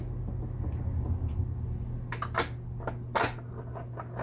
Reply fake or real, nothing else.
real